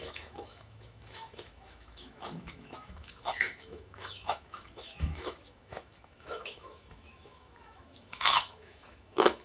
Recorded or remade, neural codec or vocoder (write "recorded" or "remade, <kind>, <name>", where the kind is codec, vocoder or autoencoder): remade, autoencoder, DAC-VAE